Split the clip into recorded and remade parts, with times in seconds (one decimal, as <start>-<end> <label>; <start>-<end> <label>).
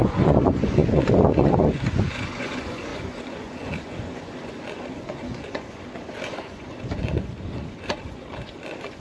0.0-9.0 remade